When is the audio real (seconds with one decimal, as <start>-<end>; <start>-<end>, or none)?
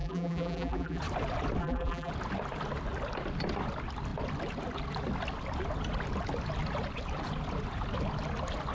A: 1.0-1.6; 2.1-8.7